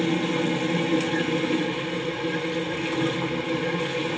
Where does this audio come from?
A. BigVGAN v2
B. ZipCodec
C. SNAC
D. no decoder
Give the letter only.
D